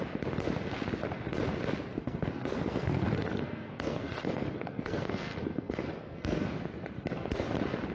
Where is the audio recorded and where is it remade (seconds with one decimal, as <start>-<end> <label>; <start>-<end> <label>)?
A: 0.0-2.0 recorded; 2.0-6.5 remade; 6.5-7.9 recorded